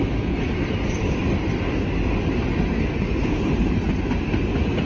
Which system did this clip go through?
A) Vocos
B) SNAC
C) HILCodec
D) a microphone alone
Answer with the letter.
D